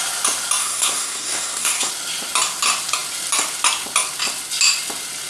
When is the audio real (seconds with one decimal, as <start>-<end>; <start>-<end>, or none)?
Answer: 0.0-0.6; 1.9-5.3